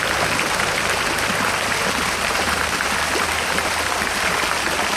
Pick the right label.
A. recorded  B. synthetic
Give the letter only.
A